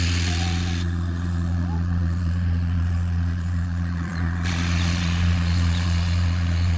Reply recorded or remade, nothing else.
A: remade